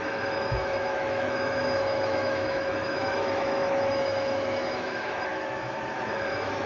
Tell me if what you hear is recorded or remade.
remade